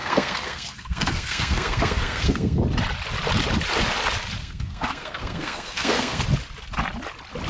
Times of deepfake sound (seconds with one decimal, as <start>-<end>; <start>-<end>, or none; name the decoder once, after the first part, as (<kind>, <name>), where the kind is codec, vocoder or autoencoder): 0.0-2.6 (codec, SNAC); 4.4-6.2